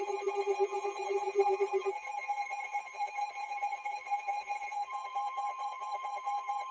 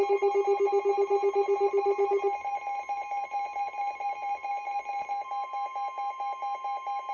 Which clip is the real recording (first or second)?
second